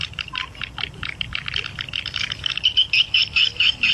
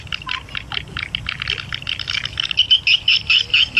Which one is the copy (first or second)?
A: first